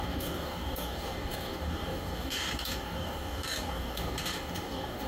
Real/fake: fake